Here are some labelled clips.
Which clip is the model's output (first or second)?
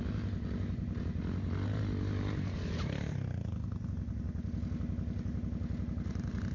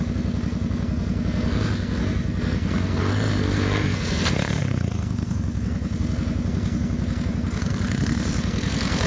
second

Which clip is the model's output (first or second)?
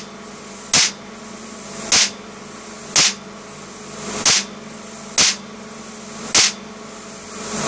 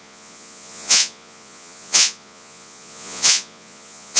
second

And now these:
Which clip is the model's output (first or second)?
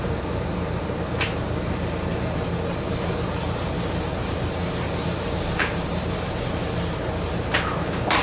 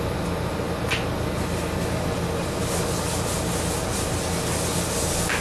first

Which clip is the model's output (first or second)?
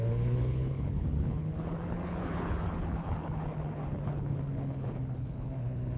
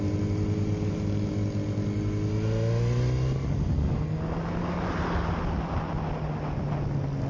first